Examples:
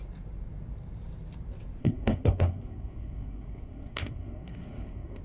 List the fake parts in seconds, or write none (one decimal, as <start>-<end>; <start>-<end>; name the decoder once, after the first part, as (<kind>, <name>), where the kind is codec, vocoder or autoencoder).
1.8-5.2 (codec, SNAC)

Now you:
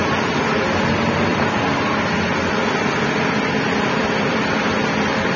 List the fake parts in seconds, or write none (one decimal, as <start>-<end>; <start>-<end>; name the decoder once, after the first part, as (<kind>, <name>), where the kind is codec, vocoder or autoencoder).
none

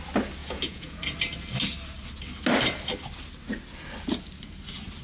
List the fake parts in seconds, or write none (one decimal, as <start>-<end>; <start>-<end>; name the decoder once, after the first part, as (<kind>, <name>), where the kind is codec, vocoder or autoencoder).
0.4-1.0 (vocoder, Vocos)

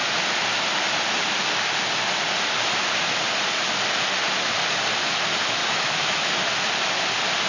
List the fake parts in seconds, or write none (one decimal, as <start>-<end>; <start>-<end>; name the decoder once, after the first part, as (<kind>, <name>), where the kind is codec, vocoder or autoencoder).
5.6-6.3 (autoencoder, DAC-VAE)

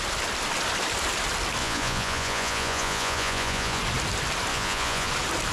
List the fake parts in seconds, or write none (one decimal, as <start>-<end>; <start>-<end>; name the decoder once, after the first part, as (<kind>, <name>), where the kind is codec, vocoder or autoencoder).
1.6-3.8 (vocoder, Vocos); 4.5-5.1

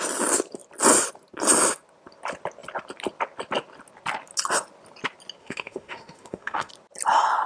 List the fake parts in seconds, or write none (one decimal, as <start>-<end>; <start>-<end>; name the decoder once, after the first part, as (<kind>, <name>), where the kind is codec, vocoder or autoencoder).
5.4-6.7 (autoencoder, DAC-VAE)